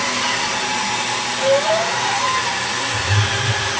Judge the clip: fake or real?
real